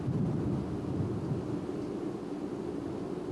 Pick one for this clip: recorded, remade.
recorded